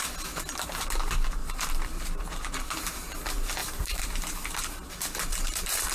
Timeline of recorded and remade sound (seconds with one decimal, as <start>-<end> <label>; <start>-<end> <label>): 0.0-1.4 recorded; 1.4-2.4 remade; 2.4-3.6 recorded; 3.6-5.9 remade